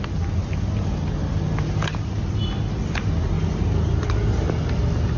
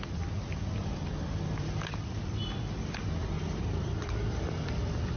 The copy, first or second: second